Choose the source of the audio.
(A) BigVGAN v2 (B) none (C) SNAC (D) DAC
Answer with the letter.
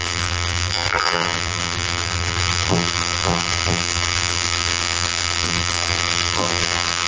A